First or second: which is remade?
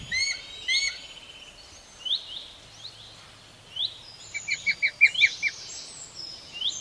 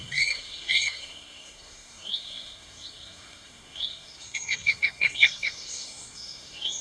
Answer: second